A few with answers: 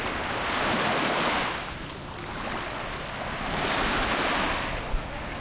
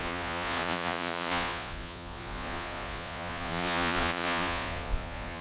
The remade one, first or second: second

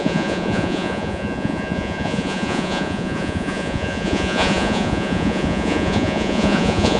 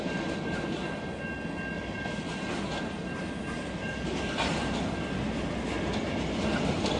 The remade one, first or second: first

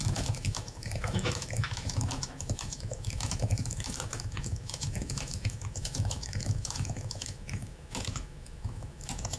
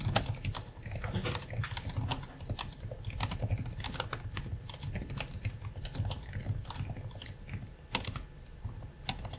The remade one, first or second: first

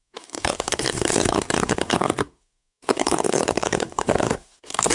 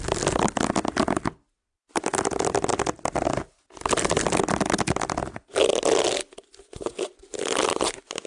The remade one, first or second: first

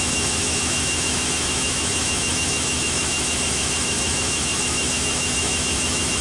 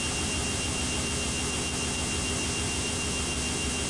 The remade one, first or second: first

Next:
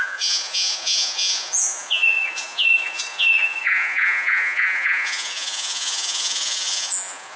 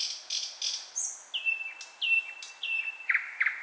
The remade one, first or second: first